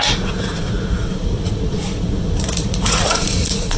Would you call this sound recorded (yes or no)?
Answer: no